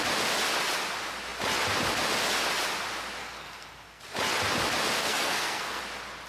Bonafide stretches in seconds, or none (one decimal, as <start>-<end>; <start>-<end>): 0.0-3.2; 4.0-5.0; 5.8-6.3